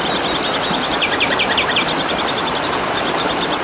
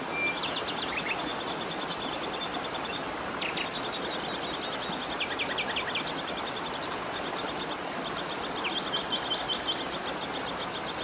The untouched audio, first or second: second